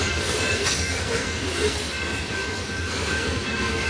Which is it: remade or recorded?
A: remade